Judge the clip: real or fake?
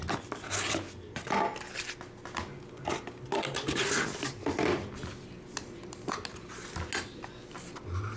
real